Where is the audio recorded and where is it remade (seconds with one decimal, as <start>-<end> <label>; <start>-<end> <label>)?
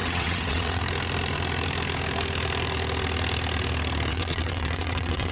0.0-0.8 remade; 0.8-4.1 recorded; 4.1-5.3 remade